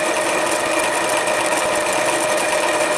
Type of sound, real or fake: real